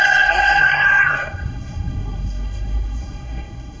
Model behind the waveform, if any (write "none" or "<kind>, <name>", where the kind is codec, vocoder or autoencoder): codec, SNAC